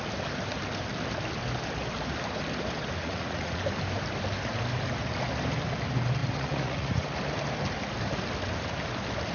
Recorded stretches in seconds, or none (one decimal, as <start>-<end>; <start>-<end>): 0.0-3.0; 3.6-6.2; 7.2-9.3